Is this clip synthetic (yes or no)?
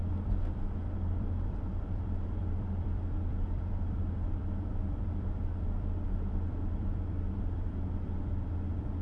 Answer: yes